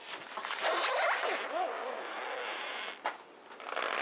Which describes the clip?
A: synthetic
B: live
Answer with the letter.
B